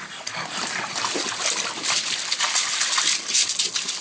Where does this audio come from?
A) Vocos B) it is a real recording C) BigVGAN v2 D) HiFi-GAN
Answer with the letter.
B